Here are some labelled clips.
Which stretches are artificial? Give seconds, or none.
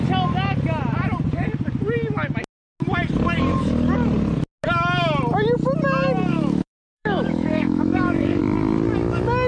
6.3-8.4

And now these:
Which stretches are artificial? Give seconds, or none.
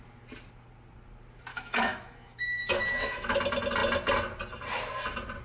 1.5-3.4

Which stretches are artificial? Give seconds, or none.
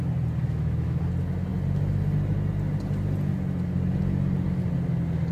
0.4-1.0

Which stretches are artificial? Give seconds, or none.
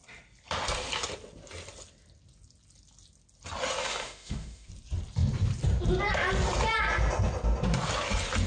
3.8-4.7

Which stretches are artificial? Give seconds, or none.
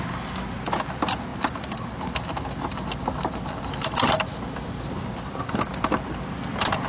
none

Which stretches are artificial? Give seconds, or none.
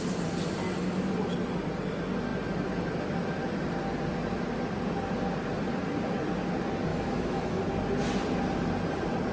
6.9-7.6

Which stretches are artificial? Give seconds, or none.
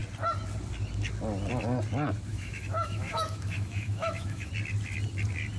2.3-4.5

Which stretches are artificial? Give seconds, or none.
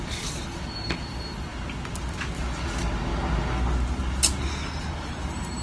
none